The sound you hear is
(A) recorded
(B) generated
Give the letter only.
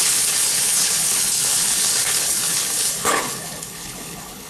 B